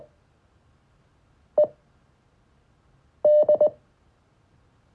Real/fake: real